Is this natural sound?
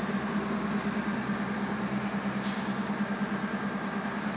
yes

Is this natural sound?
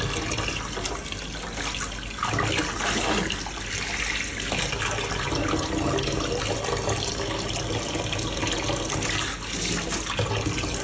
yes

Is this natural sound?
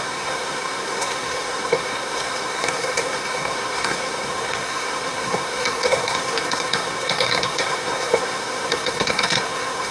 no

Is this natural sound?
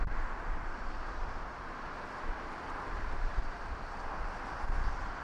no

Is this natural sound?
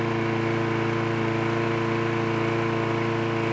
yes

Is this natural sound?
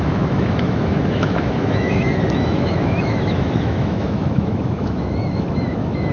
no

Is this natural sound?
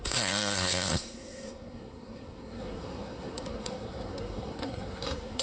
no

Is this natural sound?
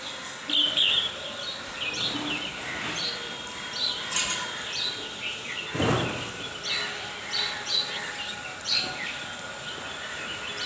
yes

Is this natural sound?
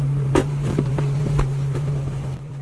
no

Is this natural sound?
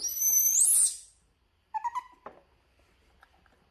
yes